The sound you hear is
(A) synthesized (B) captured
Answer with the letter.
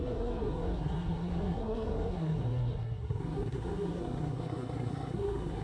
A